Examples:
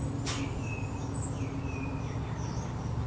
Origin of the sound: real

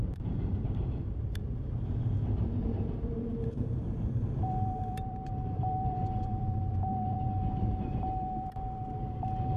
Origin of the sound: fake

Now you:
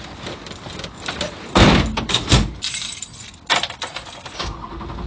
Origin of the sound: real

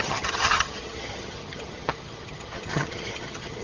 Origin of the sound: fake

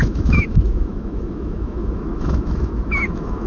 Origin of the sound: fake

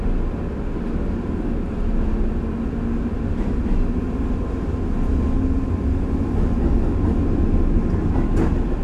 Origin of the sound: real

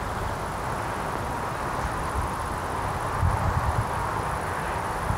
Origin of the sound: real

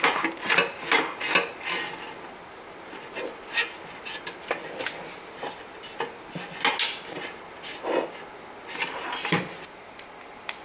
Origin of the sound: real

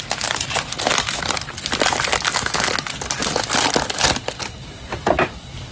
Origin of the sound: real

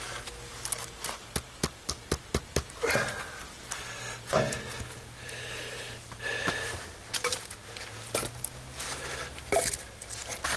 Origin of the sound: real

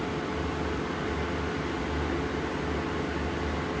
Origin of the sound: real